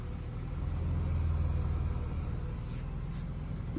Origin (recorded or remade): recorded